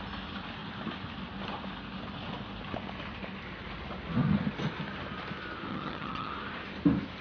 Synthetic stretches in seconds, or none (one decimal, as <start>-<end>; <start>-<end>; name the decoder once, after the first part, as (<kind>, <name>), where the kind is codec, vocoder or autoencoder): 5.7-6.3 (vocoder, HiFi-GAN)